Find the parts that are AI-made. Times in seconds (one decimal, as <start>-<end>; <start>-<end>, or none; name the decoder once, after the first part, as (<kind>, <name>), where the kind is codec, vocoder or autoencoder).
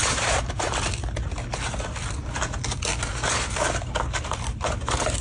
0.0-0.9 (vocoder, BigVGAN v2); 4.0-5.2